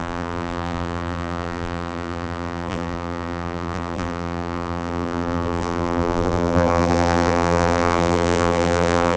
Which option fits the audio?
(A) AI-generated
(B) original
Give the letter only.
A